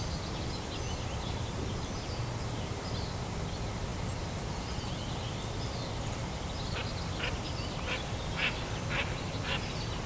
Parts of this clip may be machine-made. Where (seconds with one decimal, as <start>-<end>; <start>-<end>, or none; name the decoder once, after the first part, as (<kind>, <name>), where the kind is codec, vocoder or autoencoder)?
none